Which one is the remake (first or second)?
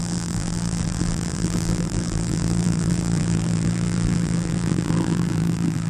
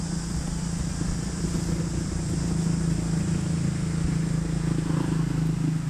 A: first